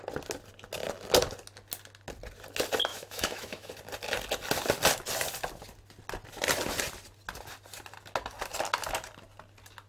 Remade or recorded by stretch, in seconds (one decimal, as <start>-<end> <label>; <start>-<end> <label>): 0.0-2.9 recorded; 2.9-3.7 remade; 3.7-9.9 recorded